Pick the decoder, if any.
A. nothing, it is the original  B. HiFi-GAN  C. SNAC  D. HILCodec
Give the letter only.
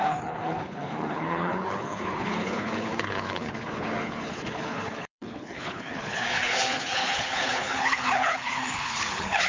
D